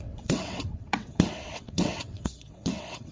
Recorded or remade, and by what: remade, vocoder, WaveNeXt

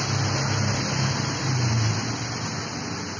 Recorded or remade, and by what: recorded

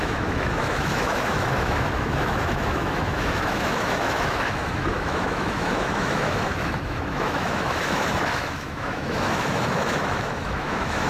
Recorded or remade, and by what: remade, autoencoder, DAC-VAE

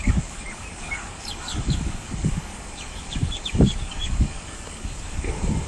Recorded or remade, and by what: remade, codec, DAC